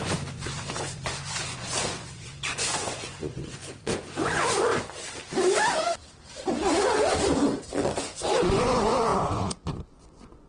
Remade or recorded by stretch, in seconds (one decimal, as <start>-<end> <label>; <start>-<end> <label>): 0.0-4.7 remade; 4.7-8.0 recorded; 8.0-10.5 remade